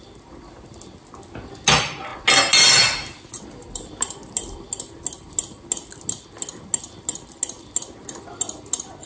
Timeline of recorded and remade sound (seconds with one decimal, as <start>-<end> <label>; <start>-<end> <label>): 0.0-9.1 recorded